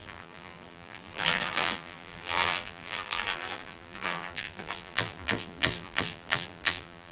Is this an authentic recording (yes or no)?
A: no